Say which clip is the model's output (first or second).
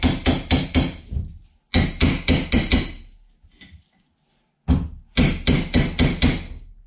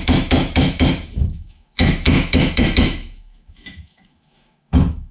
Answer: second